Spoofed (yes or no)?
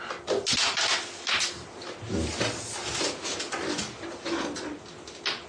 no